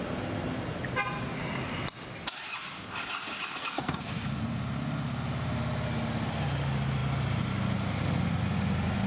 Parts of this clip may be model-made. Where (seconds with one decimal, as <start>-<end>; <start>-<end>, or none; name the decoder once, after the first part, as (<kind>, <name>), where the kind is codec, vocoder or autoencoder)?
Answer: 3.6-4.2 (codec, SNAC)